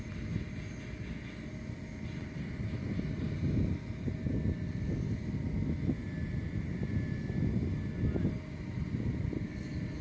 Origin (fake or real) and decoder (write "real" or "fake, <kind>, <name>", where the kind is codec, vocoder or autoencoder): real